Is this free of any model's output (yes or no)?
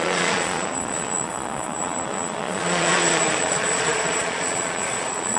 no